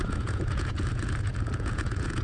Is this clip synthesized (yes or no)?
yes